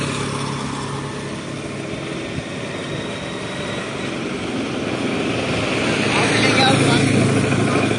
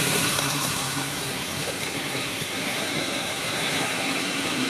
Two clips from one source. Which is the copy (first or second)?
second